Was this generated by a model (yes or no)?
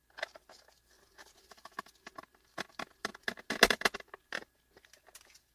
no